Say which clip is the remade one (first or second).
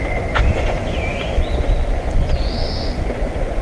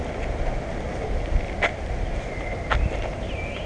first